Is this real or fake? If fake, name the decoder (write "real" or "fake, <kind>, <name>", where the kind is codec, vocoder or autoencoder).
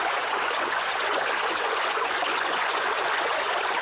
fake, vocoder, Vocos